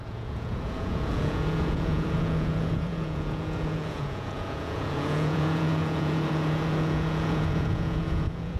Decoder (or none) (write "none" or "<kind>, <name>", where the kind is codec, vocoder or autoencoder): vocoder, Vocos